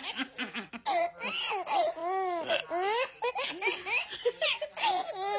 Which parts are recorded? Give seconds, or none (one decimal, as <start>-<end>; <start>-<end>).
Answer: 0.0-5.4